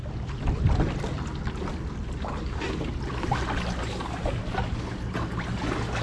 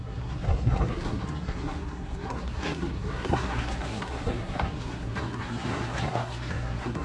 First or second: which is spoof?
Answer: second